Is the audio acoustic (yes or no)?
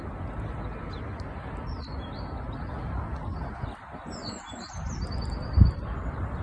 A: yes